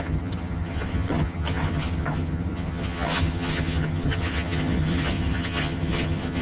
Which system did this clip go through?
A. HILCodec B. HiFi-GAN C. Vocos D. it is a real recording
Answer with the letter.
B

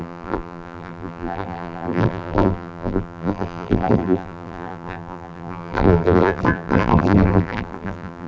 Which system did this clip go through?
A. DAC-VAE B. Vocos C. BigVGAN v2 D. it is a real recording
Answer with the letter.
C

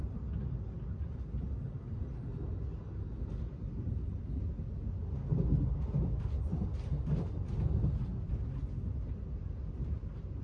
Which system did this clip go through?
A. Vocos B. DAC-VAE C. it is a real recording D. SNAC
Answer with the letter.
C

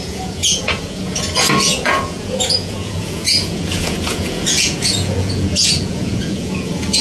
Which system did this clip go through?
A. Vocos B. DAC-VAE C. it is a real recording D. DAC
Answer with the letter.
A